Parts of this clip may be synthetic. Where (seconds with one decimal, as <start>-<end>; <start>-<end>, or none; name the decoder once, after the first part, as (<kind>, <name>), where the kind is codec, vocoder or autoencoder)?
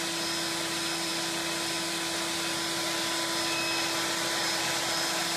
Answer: none